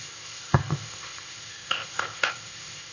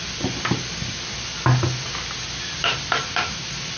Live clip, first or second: second